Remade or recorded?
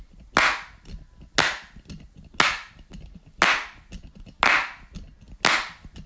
recorded